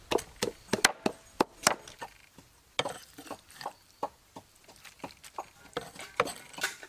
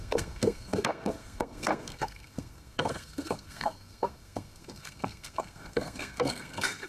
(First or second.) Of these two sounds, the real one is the first